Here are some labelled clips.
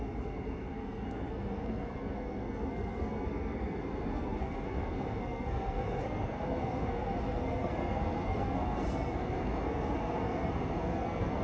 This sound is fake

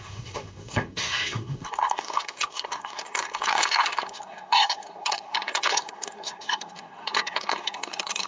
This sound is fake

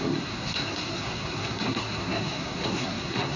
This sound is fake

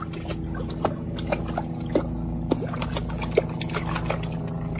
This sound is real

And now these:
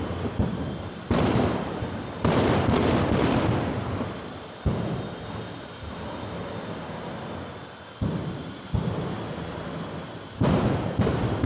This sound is real